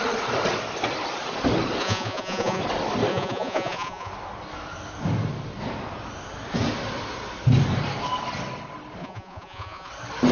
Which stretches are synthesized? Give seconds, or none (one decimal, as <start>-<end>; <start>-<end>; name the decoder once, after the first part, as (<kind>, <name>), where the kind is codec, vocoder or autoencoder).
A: 1.8-2.6 (vocoder, Vocos); 3.1-4.1; 9.0-9.9